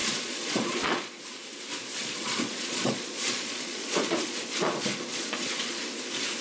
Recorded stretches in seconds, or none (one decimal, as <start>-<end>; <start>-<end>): 1.2-2.0; 5.8-6.4